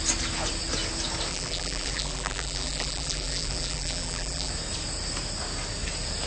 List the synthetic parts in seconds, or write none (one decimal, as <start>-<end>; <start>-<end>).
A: 1.3-4.5